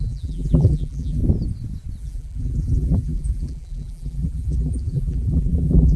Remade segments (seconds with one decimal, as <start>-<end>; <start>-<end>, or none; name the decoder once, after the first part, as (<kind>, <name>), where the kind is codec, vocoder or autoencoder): 0.0-1.2 (vocoder, BigVGAN v2); 2.0-6.0